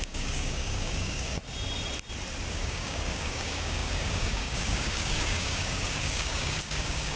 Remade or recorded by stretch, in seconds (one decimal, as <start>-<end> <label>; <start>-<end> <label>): 0.0-1.4 remade; 1.4-2.5 recorded; 2.5-7.2 remade